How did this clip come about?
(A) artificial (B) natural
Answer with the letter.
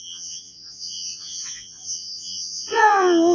A